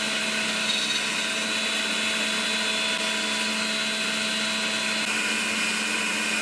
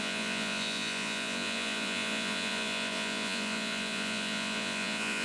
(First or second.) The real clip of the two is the first